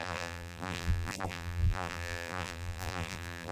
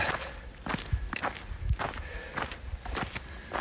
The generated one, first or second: first